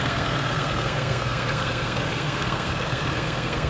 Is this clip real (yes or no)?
no